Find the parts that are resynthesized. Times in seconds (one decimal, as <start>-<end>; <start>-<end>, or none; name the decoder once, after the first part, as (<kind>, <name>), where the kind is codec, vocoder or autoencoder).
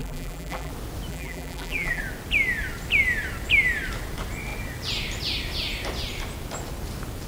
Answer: 0.0-0.7 (vocoder, BigVGAN v2); 1.1-2.0